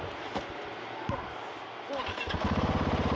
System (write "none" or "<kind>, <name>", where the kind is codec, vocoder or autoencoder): vocoder, BigVGAN v2